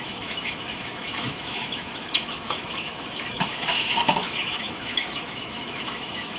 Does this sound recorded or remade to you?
remade